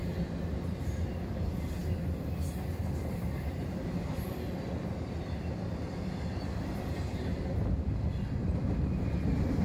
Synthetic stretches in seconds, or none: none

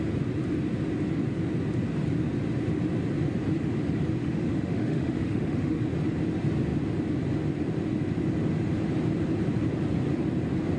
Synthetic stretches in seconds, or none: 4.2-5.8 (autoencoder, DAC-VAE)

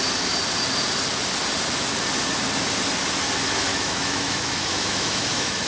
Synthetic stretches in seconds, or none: 3.7-5.7 (autoencoder, DAC-VAE)

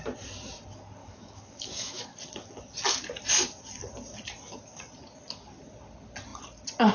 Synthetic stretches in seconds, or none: 1.0-2.2 (autoencoder, DAC-VAE)

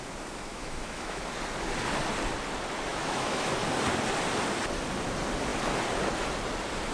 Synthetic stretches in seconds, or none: 0.5-1.2 (autoencoder, DAC-VAE); 2.9-3.5